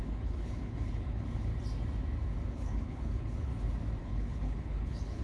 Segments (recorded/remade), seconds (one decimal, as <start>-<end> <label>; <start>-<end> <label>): 0.0-1.5 remade; 1.5-2.5 recorded; 2.5-3.5 remade; 3.5-4.0 recorded; 4.0-5.2 remade